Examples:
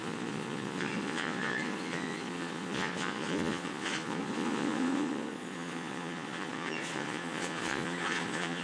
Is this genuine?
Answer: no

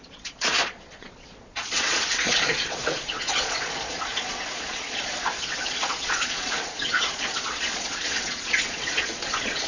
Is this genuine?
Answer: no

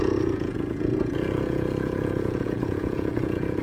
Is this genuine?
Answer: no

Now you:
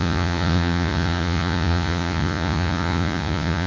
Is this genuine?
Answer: no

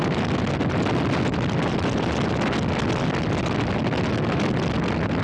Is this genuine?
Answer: yes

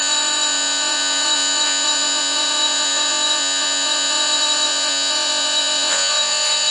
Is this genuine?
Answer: no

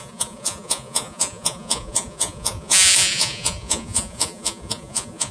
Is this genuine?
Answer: no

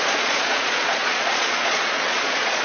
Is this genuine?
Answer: no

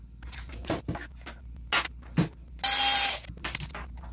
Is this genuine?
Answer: yes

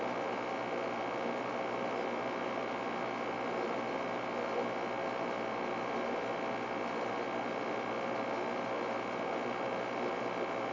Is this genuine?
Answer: yes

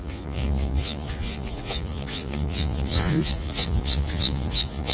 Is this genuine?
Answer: no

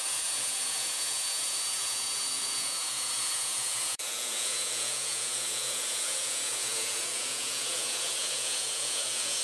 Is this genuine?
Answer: no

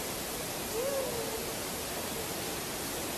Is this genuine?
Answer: yes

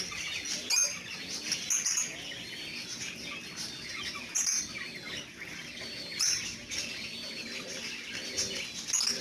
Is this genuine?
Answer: yes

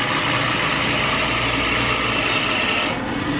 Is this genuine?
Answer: yes